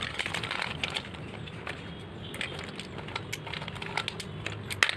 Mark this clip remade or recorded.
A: recorded